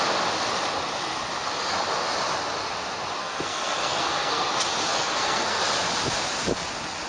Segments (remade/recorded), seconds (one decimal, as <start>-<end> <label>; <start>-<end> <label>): 0.0-3.2 recorded; 3.2-4.5 remade; 4.5-4.9 recorded; 4.9-5.6 remade; 5.6-7.1 recorded